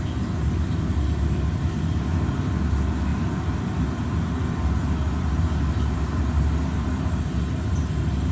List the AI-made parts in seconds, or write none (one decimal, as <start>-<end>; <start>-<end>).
none